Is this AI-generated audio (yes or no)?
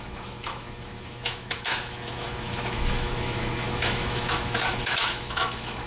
yes